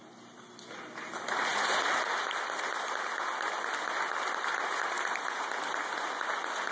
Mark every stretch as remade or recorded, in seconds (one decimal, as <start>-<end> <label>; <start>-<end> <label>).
0.0-6.7 recorded